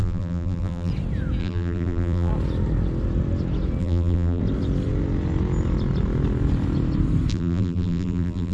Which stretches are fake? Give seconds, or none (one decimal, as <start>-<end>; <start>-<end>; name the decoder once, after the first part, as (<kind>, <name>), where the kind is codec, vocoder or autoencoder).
0.0-0.9 (vocoder, BigVGAN v2); 1.4-2.3; 3.8-4.4; 7.3-8.5